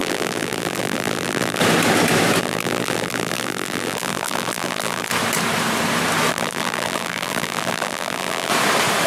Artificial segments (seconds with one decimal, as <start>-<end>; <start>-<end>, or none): 0.0-1.6; 2.4-5.1; 6.3-8.5